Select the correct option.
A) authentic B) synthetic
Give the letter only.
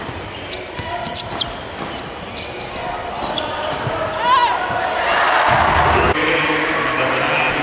A